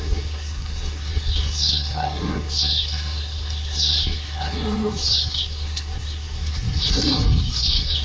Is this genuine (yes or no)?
no